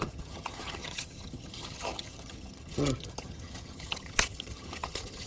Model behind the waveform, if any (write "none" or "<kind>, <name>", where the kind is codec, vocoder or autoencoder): vocoder, HiFi-GAN